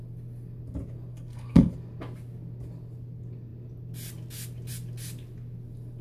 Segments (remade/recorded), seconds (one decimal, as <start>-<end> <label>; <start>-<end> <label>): 0.0-1.1 recorded; 1.1-1.7 remade; 1.7-6.0 recorded